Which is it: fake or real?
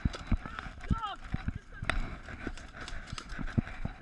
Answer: real